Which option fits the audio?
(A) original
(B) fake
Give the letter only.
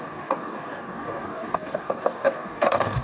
B